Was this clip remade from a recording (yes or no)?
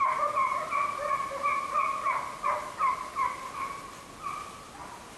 no